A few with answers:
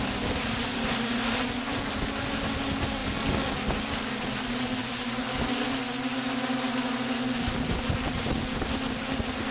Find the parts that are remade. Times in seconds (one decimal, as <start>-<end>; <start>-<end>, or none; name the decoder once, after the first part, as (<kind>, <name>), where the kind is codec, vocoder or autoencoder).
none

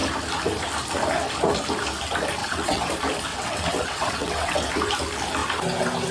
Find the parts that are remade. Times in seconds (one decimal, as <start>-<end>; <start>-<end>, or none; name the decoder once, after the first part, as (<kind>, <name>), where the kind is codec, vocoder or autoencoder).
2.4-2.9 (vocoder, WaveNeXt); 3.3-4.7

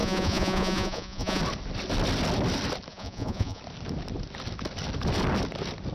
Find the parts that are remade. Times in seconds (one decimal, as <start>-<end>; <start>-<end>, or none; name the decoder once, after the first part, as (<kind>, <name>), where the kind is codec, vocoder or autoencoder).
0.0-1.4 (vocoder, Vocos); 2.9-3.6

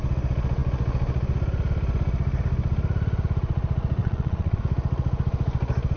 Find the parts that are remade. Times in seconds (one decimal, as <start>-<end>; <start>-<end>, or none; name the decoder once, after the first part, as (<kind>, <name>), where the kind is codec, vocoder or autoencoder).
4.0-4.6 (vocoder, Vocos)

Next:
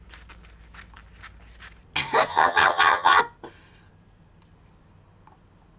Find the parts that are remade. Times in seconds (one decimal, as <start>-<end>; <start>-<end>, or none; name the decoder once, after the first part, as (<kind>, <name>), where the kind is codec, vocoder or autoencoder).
2.3-3.2 (vocoder, HiFi-GAN)

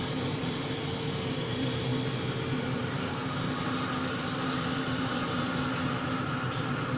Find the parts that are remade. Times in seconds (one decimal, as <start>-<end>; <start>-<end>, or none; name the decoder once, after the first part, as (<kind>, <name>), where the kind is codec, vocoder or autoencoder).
0.0-1.9 (vocoder, BigVGAN v2); 2.6-7.0